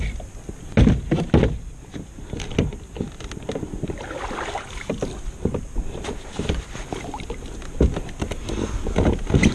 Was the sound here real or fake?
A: real